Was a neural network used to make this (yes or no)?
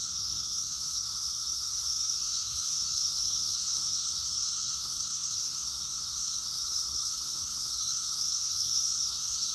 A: yes